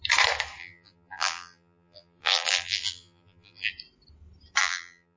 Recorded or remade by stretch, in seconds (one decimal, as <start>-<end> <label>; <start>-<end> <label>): 0.0-0.6 recorded; 0.6-3.7 remade; 3.7-4.6 recorded; 4.6-5.2 remade